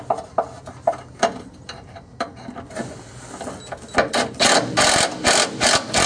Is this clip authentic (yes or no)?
yes